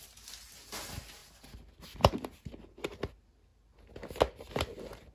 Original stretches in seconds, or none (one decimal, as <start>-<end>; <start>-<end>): 0.0-5.1